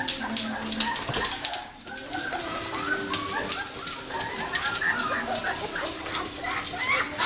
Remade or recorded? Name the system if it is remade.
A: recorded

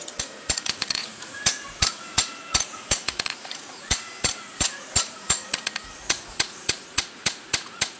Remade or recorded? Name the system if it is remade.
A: remade, vocoder, Vocos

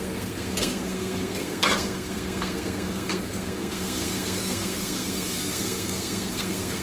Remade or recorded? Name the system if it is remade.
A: remade, codec, SNAC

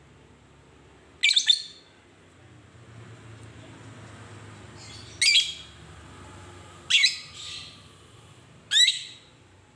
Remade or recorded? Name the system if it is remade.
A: recorded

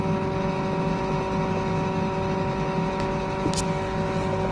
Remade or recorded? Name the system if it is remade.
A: recorded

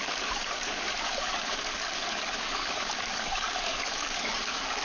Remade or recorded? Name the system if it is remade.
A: remade, codec, DAC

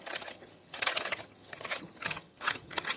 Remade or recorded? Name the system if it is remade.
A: remade, vocoder, HiFi-GAN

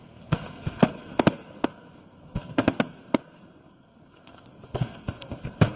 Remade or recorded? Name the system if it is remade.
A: remade, codec, SNAC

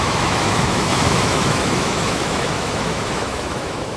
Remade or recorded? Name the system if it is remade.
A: remade, autoencoder, DAC-VAE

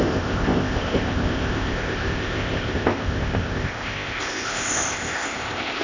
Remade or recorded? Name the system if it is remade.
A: remade, codec, ZipCodec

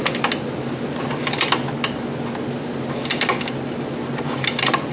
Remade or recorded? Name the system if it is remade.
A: recorded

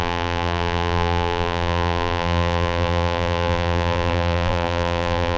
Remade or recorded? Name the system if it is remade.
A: remade, vocoder, BigVGAN v2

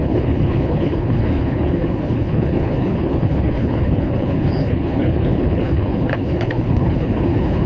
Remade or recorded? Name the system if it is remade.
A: remade, codec, HILCodec